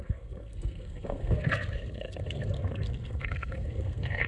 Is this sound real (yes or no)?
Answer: no